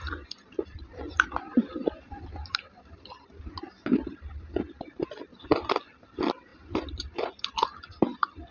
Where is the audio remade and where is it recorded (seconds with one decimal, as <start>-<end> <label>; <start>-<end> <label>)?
0.0-1.5 recorded; 1.5-3.0 remade; 3.0-6.5 recorded; 6.5-7.3 remade; 7.3-8.5 recorded